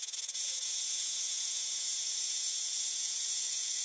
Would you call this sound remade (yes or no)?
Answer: yes